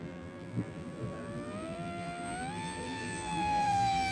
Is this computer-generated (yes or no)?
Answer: yes